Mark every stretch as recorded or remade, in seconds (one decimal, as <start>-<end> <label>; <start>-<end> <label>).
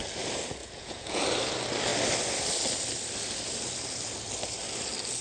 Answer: 0.0-0.6 recorded; 0.6-1.2 remade; 1.2-5.2 recorded